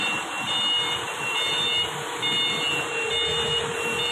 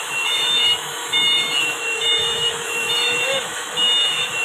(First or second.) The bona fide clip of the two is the first